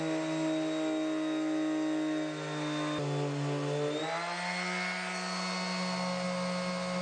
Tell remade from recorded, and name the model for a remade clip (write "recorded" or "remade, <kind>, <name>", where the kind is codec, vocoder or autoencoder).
recorded